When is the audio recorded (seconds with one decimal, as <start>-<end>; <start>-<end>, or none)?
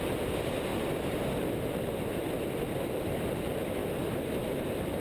0.0-0.7; 3.4-3.8